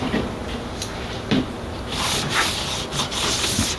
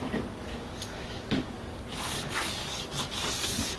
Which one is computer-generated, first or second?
second